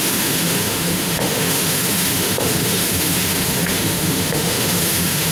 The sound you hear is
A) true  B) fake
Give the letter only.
B